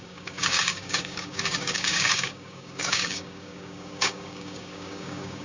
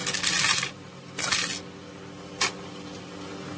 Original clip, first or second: second